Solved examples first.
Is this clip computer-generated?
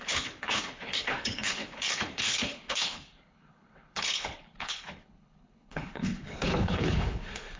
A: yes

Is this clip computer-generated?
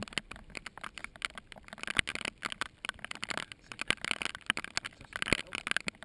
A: no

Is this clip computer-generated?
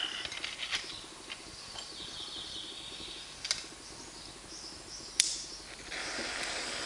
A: no